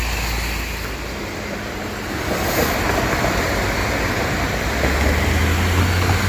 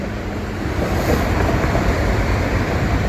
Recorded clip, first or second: first